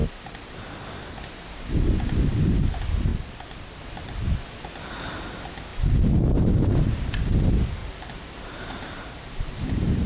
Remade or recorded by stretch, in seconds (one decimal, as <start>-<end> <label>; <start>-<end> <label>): 0.0-7.8 recorded; 7.8-10.1 remade